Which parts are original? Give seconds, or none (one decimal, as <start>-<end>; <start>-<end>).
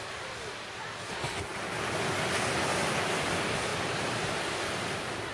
0.0-2.7; 3.3-3.7